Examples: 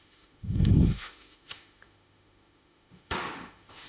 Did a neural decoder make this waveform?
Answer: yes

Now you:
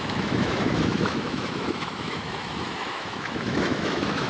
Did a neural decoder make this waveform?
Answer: yes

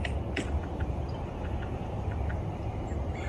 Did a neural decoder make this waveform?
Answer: no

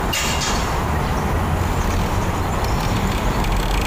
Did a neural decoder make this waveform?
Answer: no